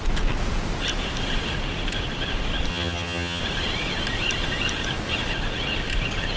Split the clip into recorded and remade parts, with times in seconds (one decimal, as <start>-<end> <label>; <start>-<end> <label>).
0.0-2.7 recorded; 2.7-3.4 remade; 3.4-6.4 recorded